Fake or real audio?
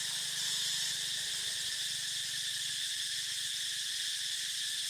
fake